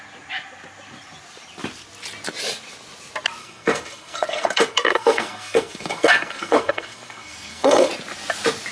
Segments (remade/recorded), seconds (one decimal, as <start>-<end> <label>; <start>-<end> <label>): 0.0-3.4 recorded; 3.4-7.9 remade; 7.9-8.7 recorded